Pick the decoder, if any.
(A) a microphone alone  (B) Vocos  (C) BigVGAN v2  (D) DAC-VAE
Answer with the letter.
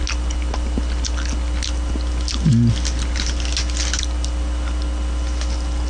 A